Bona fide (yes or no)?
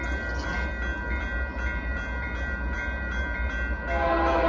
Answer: yes